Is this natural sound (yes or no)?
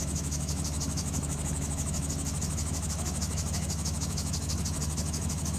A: no